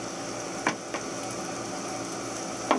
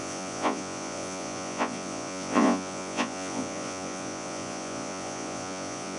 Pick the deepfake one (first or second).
second